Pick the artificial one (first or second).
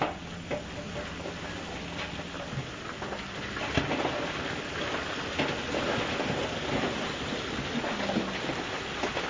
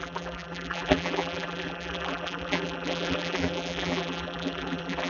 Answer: second